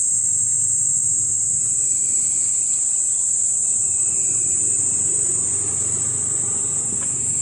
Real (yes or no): yes